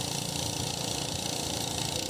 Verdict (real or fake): real